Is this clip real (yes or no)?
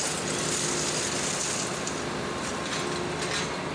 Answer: yes